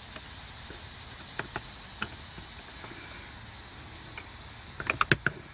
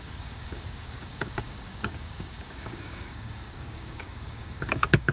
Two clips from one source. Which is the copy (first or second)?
second